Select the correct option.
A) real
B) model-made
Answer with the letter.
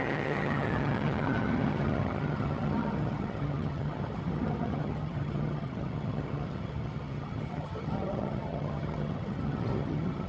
B